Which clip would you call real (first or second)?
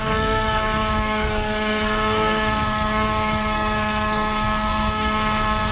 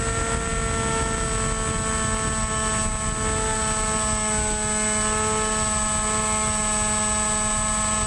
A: second